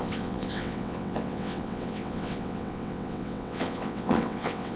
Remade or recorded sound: remade